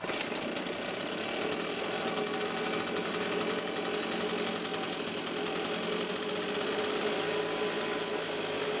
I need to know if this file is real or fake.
real